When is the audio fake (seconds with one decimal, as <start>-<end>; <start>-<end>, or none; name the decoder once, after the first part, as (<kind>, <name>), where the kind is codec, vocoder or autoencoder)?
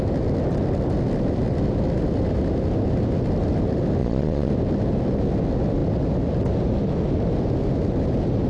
4.0-4.5 (vocoder, Vocos)